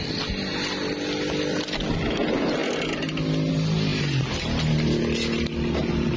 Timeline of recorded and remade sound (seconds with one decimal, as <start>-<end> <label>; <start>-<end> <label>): 0.0-6.2 recorded